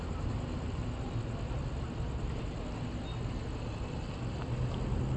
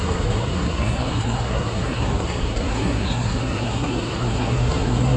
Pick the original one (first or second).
first